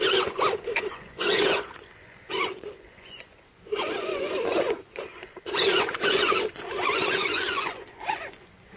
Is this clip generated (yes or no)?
yes